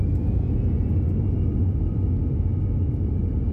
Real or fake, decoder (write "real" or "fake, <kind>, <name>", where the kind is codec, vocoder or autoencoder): real